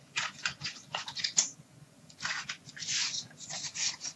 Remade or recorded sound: remade